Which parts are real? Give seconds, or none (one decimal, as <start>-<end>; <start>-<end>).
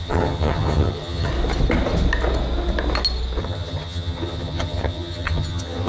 1.3-3.4